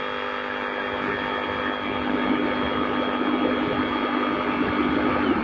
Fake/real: real